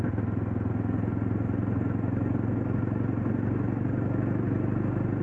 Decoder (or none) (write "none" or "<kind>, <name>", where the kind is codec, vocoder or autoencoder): none